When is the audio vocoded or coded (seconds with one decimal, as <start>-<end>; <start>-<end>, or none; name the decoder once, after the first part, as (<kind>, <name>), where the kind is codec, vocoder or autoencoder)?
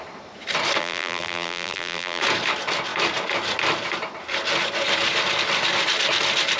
0.8-2.2 (vocoder, BigVGAN v2)